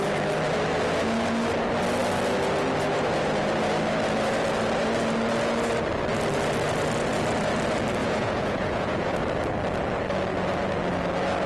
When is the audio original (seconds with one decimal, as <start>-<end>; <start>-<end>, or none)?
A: 0.0-8.0; 9.2-11.5